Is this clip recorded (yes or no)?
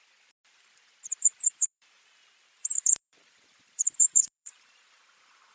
no